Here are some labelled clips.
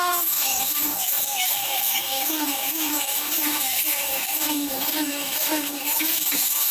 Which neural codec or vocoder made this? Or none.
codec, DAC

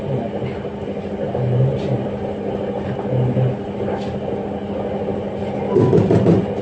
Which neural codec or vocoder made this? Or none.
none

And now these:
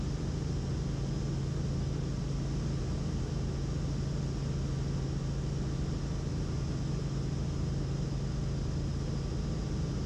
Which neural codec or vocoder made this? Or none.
none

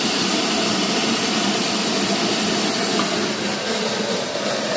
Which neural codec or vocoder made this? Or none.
none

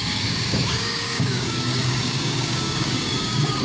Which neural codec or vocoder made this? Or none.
codec, DAC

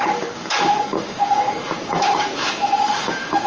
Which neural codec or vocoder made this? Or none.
codec, DAC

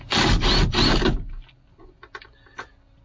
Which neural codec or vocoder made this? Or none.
none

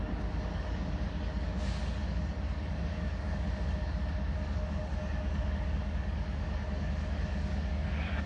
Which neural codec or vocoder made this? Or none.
codec, DAC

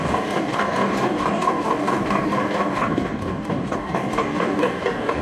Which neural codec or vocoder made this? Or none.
codec, DAC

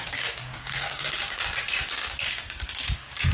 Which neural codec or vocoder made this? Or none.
codec, DAC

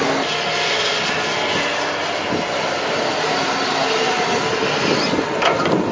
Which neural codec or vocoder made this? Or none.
none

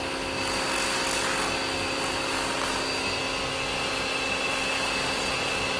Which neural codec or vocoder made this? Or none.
none